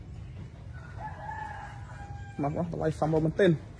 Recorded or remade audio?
recorded